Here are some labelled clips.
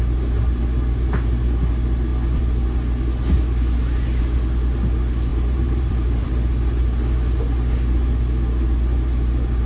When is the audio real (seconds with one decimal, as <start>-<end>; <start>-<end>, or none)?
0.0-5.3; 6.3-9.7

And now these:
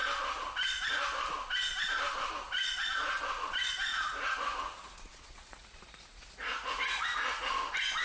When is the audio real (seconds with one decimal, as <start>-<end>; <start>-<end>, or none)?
0.0-3.9; 7.5-8.0

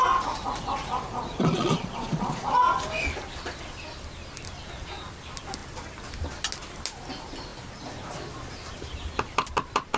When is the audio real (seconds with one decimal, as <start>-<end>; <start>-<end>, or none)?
0.0-1.1; 2.6-10.0

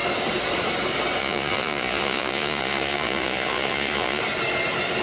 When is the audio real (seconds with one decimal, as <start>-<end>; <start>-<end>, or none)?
0.0-1.2; 4.2-5.0